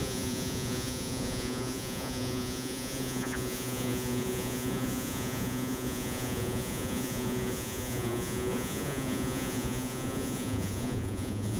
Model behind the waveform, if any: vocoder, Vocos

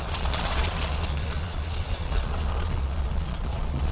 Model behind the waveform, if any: vocoder, Vocos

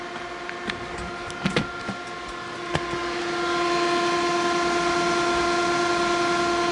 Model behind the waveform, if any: none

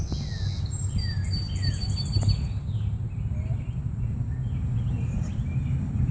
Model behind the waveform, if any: none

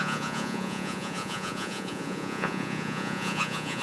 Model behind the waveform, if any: vocoder, Vocos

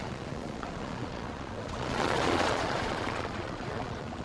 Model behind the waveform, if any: vocoder, Vocos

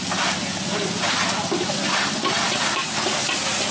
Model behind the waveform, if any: none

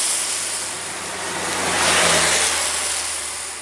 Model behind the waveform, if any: none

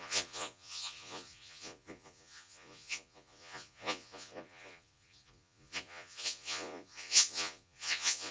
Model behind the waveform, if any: vocoder, Vocos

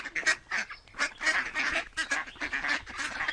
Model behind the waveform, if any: none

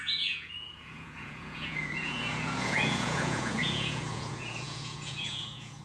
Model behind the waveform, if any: vocoder, Vocos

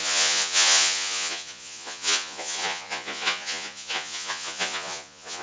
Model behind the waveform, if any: vocoder, Vocos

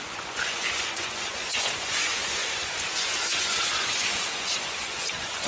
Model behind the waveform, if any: vocoder, Vocos